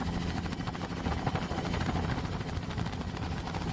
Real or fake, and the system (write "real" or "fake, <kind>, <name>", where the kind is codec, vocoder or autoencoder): real